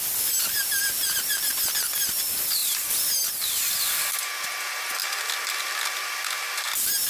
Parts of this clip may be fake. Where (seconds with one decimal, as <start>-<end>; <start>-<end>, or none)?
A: none